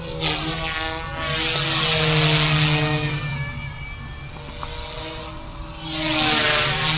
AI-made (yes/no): no